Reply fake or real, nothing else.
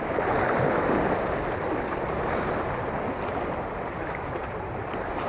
real